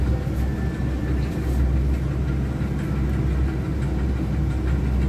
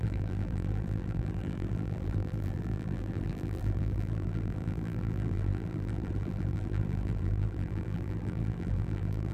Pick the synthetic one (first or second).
second